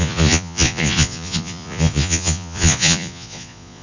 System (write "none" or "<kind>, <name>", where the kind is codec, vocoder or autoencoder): vocoder, Vocos